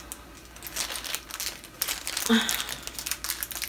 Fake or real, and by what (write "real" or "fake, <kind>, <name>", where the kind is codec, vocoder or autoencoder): real